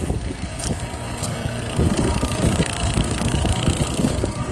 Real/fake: fake